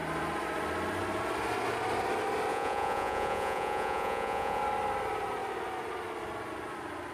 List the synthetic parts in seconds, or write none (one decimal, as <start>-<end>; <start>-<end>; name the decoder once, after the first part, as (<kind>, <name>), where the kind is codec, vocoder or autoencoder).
2.5-4.6 (vocoder, Vocos)